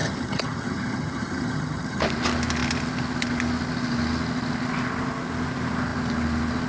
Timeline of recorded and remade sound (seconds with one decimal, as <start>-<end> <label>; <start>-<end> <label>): 0.0-2.0 remade; 2.0-6.7 recorded